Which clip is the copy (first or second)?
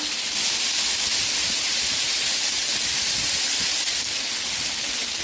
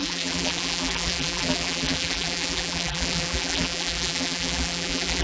second